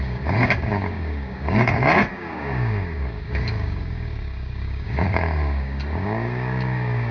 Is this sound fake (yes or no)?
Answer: yes